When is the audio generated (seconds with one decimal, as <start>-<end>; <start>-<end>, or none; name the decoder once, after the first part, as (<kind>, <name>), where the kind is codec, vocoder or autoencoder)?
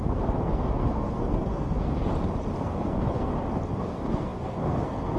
0.0-2.1 (codec, SNAC); 2.6-3.3; 3.8-5.2